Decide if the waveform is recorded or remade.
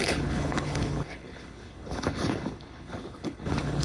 remade